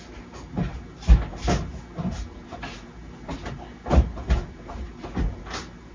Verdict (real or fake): real